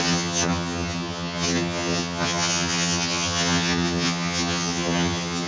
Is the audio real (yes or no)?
no